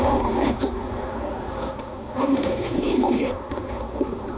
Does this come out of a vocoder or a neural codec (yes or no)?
yes